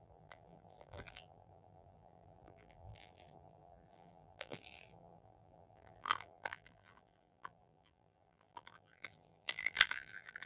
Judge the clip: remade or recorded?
remade